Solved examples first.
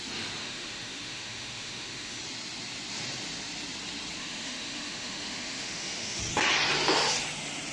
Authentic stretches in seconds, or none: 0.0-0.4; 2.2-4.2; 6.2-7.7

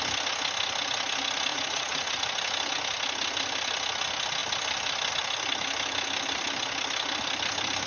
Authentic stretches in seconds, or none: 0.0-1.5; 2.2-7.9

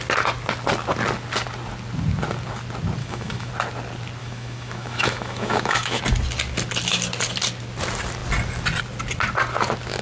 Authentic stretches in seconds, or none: 0.0-3.0; 3.5-4.2; 6.0-10.0

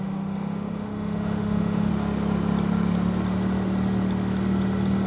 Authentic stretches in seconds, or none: 1.9-5.1

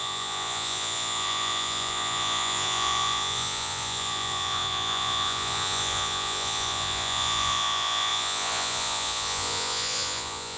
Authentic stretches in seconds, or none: none